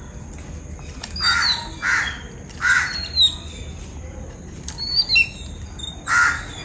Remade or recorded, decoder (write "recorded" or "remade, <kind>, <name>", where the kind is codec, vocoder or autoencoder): recorded